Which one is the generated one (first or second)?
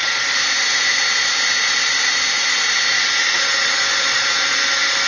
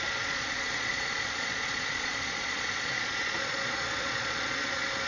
second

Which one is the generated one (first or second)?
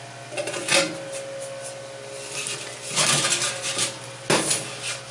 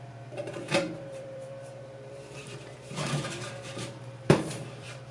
second